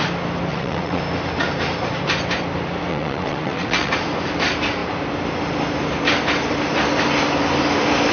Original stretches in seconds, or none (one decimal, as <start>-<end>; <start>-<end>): 0.0-0.5; 1.0-2.9; 3.9-8.1